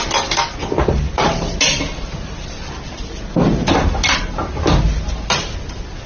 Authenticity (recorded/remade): recorded